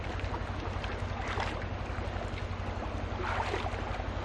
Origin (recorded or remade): recorded